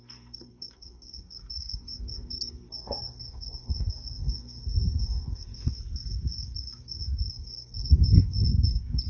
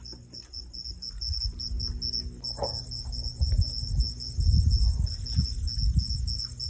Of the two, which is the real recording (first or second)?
second